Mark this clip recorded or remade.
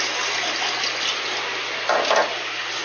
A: recorded